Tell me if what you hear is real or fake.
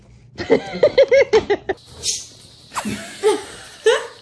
real